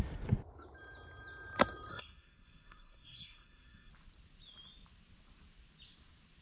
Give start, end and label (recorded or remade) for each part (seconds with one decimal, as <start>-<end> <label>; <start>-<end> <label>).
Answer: 0.0-1.9 recorded; 1.9-3.9 remade; 3.9-6.4 recorded